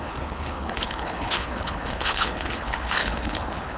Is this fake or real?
fake